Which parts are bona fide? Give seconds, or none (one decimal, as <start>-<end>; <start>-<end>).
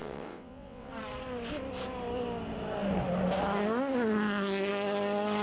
0.9-5.4